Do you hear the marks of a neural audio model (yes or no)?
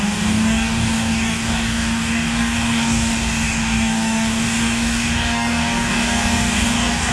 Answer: yes